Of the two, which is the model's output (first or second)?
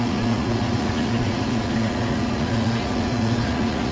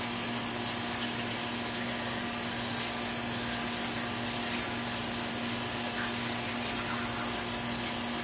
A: first